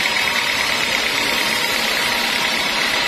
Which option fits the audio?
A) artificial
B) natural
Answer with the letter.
A